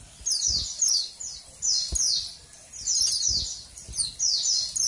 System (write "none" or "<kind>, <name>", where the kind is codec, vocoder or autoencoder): none